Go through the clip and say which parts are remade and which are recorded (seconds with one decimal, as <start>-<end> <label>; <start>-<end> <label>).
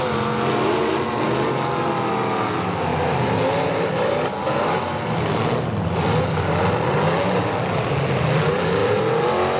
0.0-9.6 recorded